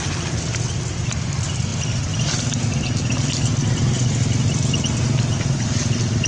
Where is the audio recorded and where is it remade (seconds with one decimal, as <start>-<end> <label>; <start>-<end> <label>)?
0.0-6.3 recorded